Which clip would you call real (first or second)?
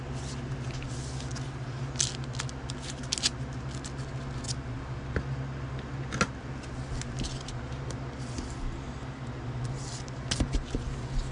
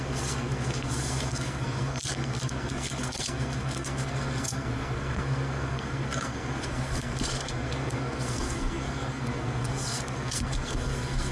first